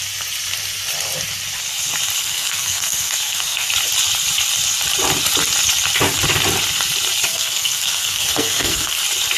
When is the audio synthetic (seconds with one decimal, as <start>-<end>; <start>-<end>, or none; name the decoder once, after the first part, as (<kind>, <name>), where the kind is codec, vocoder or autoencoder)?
2.2-3.7 (codec, SNAC); 7.3-9.0